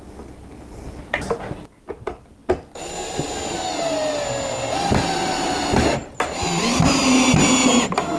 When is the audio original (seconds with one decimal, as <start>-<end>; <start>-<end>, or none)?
0.0-8.2

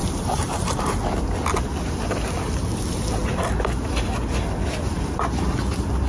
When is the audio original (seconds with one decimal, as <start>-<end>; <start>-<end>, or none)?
0.9-6.1

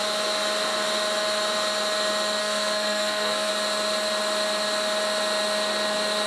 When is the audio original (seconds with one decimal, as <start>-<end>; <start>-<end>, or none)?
0.0-2.4; 3.5-6.3